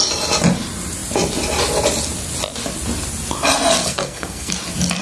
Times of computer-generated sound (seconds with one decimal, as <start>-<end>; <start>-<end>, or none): 3.8-4.5